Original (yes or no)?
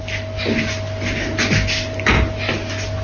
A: yes